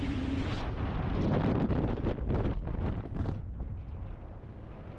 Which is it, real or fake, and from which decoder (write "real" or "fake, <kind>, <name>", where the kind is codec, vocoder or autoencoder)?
real